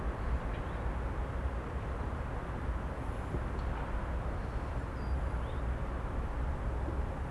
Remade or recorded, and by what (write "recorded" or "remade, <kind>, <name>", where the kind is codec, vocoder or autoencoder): recorded